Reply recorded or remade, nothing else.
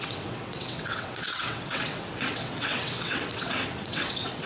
remade